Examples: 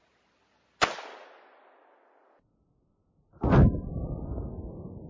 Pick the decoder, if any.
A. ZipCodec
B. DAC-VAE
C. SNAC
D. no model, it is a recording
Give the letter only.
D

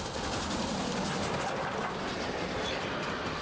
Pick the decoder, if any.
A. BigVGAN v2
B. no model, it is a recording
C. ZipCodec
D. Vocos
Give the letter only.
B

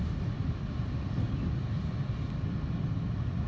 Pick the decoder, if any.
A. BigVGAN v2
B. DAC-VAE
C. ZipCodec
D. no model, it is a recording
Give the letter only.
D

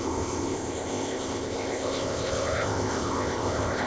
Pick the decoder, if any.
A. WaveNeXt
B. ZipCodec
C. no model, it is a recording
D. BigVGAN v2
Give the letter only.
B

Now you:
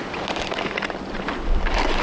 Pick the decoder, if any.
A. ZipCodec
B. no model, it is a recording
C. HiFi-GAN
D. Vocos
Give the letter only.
B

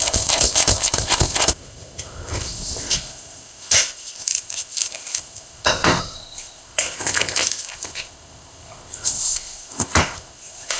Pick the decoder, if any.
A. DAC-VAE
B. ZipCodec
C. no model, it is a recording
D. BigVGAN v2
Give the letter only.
B